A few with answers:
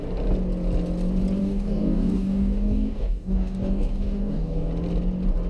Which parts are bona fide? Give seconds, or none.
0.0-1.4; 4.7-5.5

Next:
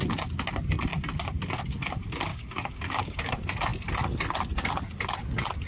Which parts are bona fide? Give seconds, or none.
0.0-2.3; 3.3-5.7

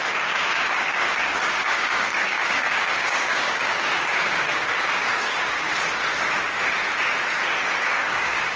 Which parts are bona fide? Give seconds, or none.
5.7-7.8

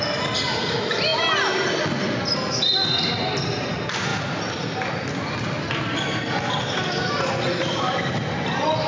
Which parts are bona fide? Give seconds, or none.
0.0-8.9

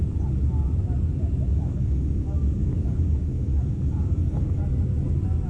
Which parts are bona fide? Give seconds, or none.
0.0-1.5; 4.6-5.5

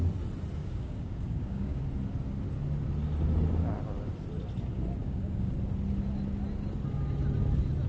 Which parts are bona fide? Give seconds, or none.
0.0-0.6; 1.8-5.0; 5.5-7.9

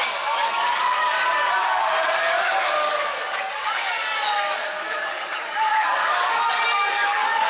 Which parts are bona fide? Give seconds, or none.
none